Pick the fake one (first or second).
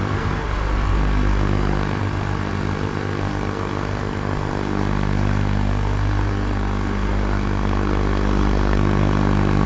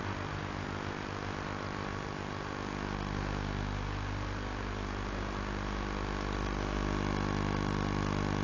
first